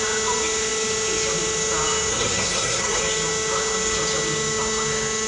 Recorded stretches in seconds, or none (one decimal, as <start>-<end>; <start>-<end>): 0.0-2.1; 3.0-5.3

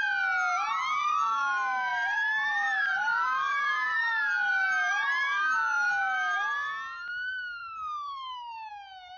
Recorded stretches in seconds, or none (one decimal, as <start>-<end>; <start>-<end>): 0.0-1.9; 4.0-7.6; 8.7-9.2

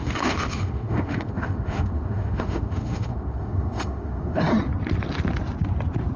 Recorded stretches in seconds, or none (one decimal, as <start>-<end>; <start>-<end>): 4.5-6.2

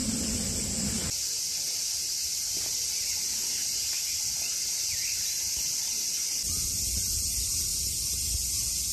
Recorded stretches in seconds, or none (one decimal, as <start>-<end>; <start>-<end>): 0.0-8.9

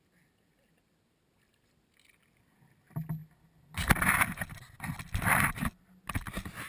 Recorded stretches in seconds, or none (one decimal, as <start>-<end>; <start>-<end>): 0.0-6.7

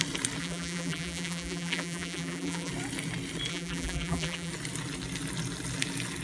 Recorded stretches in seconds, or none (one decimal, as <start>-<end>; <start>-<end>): 0.0-0.4; 2.7-3.5; 4.5-6.2